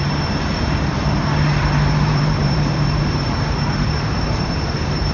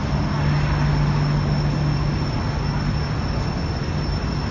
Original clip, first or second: second